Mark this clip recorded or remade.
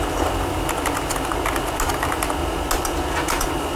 recorded